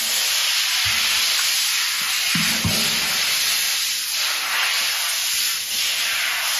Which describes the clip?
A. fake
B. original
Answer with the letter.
B